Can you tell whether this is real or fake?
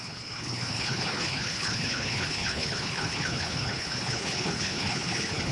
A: fake